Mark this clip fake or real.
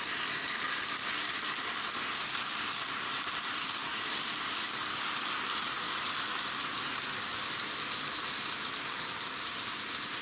real